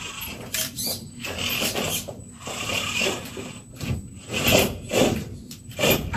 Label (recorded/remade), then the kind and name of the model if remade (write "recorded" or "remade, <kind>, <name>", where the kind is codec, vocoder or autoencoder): remade, vocoder, BigVGAN v2